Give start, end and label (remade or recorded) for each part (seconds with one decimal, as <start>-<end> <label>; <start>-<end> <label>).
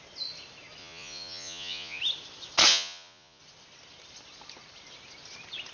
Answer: 0.0-0.8 recorded; 0.8-2.0 remade; 2.0-2.7 recorded; 2.7-3.4 remade; 3.4-5.7 recorded